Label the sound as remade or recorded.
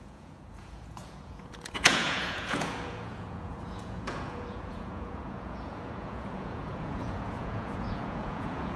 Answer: remade